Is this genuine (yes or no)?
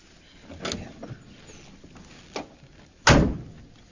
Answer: yes